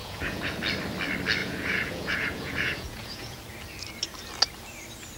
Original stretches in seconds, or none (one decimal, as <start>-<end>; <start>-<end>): 0.6-1.4; 3.4-5.2